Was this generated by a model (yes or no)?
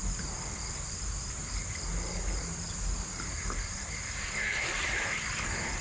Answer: no